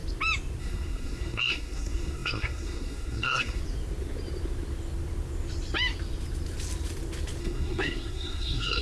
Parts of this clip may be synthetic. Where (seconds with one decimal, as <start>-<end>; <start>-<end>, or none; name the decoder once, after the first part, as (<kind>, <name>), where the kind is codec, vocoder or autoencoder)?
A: 0.6-3.6 (codec, SNAC); 7.4-8.8